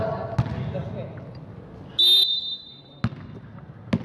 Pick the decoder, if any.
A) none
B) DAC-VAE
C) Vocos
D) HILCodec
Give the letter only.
A